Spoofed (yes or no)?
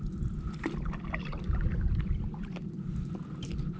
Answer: no